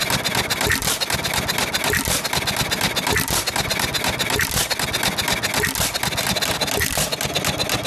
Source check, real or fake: real